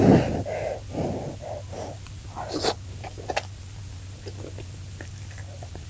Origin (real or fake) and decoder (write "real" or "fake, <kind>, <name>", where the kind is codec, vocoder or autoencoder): real